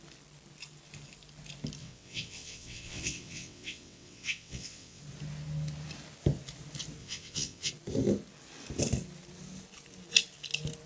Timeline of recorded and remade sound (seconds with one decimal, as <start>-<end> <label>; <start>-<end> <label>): 0.0-1.8 recorded; 1.8-5.0 remade; 5.0-7.0 recorded; 7.0-7.7 remade; 7.7-10.9 recorded